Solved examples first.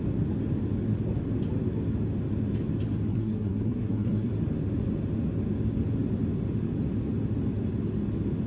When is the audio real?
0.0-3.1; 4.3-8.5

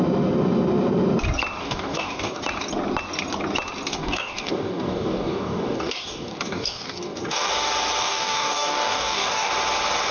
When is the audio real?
0.0-1.6; 2.4-3.9; 7.5-8.0; 9.5-10.1

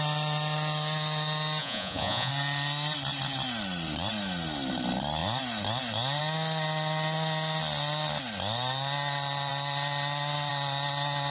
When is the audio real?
0.0-1.6; 2.3-11.3

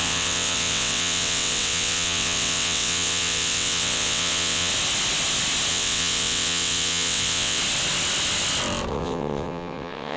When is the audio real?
4.7-5.7; 7.6-8.9